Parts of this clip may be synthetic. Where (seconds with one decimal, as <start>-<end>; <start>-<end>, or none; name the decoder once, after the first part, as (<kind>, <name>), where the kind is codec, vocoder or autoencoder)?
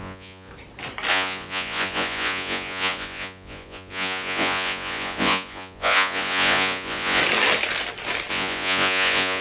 0.0-0.5 (vocoder, Vocos); 1.1-7.2; 8.3-9.4